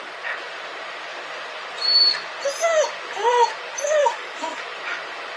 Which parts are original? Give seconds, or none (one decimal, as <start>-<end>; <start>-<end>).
0.0-4.0; 4.6-5.4